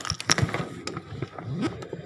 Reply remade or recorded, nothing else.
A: recorded